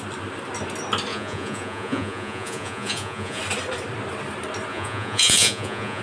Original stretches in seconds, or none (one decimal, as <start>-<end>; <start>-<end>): 0.0-1.1; 3.4-4.7